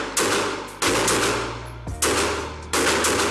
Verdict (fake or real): real